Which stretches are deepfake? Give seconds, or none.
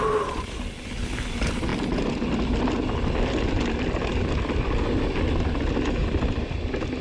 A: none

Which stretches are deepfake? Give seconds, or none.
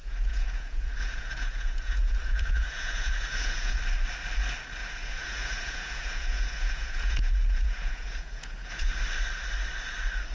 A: 0.0-3.8; 4.8-8.9